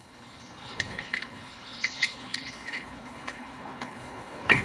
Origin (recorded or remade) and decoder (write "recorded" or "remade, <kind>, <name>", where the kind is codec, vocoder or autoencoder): remade, codec, HILCodec